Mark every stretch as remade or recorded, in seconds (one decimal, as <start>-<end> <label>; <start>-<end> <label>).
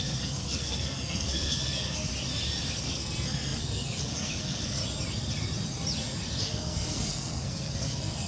0.0-2.1 remade; 2.1-2.8 recorded; 2.8-4.8 remade; 4.8-6.4 recorded; 6.4-8.3 remade